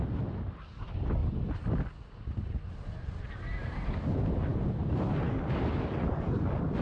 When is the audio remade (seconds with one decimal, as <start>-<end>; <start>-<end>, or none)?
none